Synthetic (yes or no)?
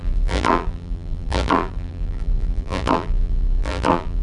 yes